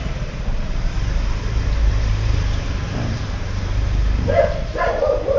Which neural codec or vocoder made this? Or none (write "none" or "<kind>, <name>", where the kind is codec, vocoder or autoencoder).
vocoder, BigVGAN v2